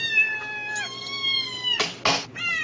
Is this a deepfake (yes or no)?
no